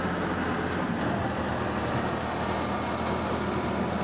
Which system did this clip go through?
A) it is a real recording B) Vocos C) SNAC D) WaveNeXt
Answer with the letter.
A